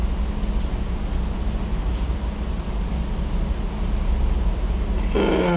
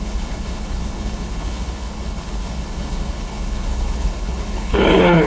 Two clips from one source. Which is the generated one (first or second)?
second